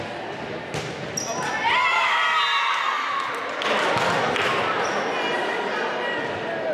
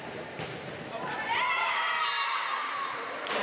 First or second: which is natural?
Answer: first